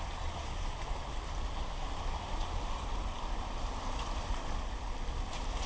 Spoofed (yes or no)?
no